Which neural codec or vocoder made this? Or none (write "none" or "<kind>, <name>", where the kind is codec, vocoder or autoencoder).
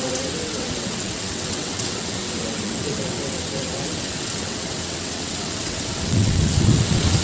vocoder, WaveNeXt